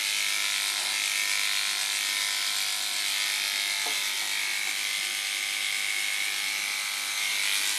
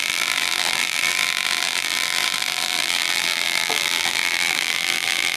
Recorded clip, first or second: first